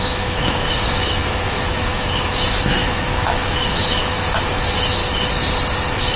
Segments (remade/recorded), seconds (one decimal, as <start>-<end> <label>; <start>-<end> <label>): 0.0-5.0 remade; 5.0-6.2 recorded